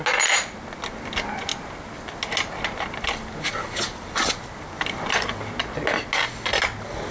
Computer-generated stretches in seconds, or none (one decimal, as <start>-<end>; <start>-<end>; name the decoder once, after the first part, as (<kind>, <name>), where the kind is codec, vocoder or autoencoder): none